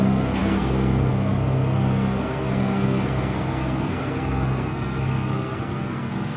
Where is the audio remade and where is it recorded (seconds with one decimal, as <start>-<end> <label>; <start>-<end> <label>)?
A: 0.0-6.4 remade